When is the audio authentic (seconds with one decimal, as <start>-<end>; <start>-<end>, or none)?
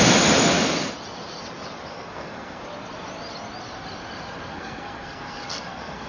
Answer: 0.0-1.9; 2.6-4.5